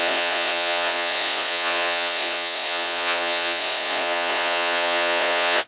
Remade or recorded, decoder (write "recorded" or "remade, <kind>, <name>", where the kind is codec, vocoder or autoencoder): remade, vocoder, Vocos